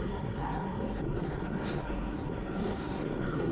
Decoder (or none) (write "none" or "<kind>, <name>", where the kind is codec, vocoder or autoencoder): codec, SNAC